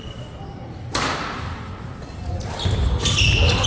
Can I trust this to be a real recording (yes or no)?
yes